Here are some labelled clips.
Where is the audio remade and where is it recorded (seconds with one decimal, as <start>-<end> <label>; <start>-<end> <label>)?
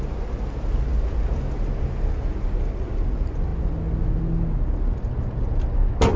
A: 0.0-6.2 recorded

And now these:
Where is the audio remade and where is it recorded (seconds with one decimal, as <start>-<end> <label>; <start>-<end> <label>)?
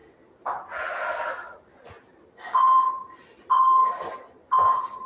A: 0.0-3.8 recorded; 3.8-5.1 remade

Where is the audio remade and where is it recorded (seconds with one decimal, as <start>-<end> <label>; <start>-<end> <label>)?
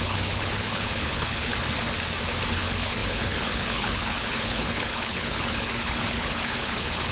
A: 0.0-1.5 remade; 1.5-2.5 recorded; 2.5-7.1 remade